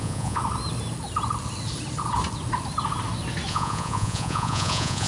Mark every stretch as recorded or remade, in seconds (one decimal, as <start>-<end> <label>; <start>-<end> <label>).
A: 0.0-0.4 remade; 0.4-3.5 recorded; 3.5-5.1 remade